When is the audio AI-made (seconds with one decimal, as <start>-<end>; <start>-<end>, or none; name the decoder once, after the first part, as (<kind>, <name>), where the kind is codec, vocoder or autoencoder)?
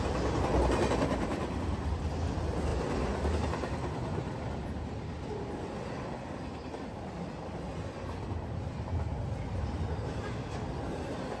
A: none